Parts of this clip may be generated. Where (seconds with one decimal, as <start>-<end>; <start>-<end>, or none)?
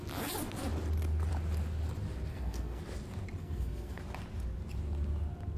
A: 2.3-2.8; 3.4-4.0